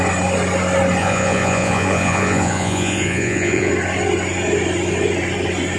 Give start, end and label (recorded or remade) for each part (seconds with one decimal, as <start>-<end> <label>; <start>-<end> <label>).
0.0-1.0 recorded; 1.0-3.7 remade; 3.7-5.8 recorded